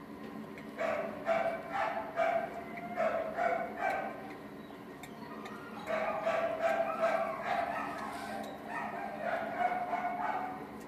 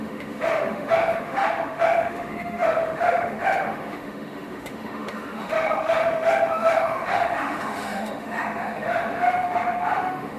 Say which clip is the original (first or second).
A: first